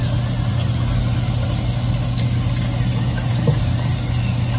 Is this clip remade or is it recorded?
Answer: recorded